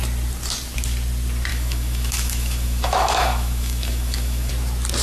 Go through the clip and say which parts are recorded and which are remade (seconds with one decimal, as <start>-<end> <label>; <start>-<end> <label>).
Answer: 0.0-1.5 recorded; 1.5-4.5 remade; 4.5-5.0 recorded